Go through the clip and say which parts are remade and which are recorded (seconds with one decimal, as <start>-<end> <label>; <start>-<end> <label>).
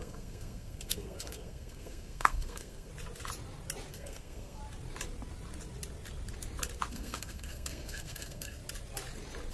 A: 0.0-2.9 remade; 2.9-3.9 recorded; 3.9-4.6 remade; 4.6-6.9 recorded; 6.9-8.6 remade; 8.6-9.5 recorded